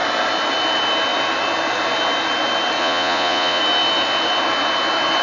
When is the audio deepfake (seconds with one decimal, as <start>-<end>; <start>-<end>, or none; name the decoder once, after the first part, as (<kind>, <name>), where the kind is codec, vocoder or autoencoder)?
2.8-3.6 (vocoder, Vocos)